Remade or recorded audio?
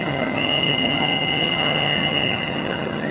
remade